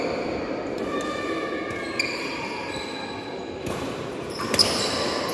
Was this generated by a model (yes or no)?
no